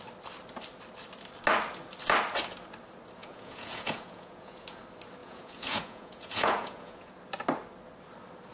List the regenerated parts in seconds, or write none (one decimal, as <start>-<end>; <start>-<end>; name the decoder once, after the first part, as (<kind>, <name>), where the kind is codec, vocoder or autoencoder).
3.2-4.8 (vocoder, Vocos); 5.2-7.1

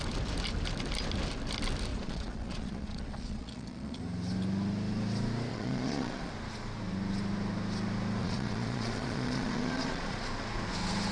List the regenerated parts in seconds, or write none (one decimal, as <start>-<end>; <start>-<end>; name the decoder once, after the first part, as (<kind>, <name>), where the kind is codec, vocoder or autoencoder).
1.9-4.0 (vocoder, Vocos); 5.5-6.3; 8.2-10.2